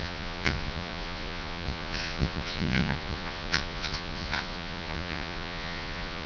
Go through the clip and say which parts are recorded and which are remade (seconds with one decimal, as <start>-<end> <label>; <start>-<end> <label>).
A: 0.0-6.3 remade